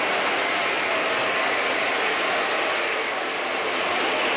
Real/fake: real